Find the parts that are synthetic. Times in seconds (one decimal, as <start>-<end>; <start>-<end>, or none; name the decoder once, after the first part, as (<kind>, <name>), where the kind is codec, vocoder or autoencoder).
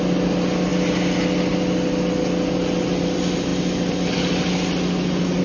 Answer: none